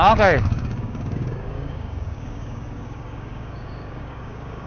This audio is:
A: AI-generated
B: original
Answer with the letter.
A